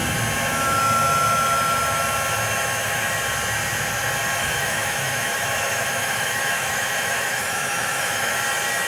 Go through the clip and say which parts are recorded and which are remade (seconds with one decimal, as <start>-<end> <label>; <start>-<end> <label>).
0.0-4.4 recorded; 4.4-8.3 remade; 8.3-8.9 recorded